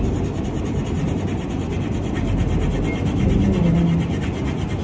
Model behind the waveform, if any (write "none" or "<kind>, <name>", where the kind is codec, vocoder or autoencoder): none